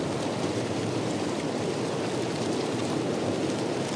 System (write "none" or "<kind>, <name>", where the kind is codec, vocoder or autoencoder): vocoder, BigVGAN v2